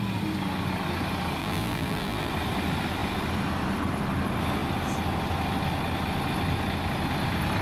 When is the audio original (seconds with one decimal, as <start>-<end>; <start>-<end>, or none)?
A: 0.0-1.4; 2.3-7.6